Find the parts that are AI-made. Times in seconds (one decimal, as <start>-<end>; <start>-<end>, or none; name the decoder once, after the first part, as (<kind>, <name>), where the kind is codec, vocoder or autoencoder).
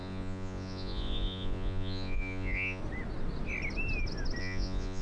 0.0-2.8 (vocoder, Vocos); 4.4-5.0